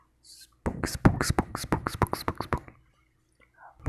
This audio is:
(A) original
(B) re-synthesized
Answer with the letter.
A